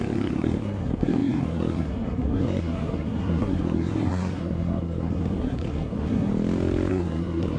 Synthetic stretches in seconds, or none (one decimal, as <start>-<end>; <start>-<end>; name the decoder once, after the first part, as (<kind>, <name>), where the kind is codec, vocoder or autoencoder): 0.0-6.3 (codec, SNAC); 6.9-7.6